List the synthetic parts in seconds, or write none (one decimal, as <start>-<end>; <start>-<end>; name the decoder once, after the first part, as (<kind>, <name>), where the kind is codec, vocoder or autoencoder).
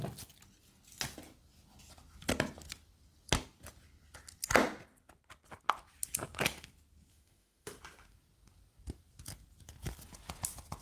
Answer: 7.1-7.7 (autoencoder, DAC-VAE)